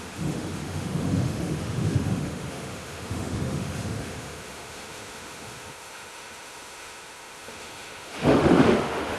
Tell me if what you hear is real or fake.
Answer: fake